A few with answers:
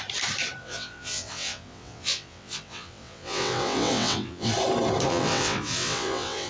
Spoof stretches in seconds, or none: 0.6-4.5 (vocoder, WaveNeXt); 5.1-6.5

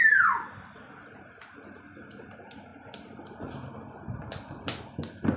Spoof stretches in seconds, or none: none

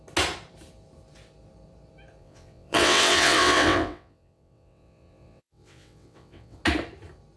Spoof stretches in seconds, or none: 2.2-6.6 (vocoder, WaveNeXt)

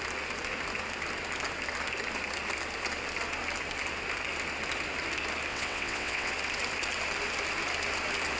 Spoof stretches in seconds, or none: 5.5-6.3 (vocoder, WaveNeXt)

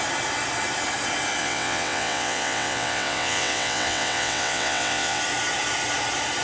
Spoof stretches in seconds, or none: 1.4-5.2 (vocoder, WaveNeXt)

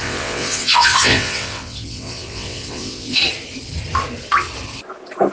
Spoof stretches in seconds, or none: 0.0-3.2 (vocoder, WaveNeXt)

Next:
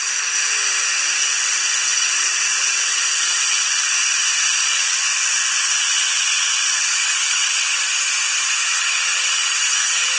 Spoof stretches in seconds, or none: 1.2-3.9 (vocoder, WaveNeXt); 4.7-7.8; 8.7-10.2